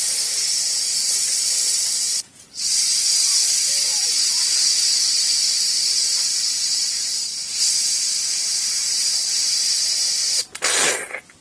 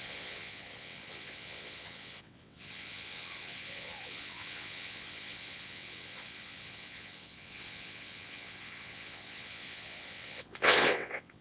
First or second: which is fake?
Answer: second